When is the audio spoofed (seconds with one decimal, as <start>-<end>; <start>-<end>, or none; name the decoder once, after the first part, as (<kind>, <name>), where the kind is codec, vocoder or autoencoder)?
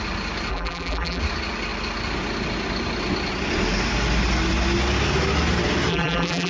0.5-1.2 (vocoder, BigVGAN v2); 5.9-6.5